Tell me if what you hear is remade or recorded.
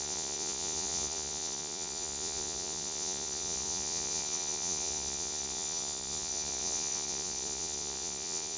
remade